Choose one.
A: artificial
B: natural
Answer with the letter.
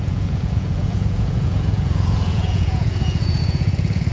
A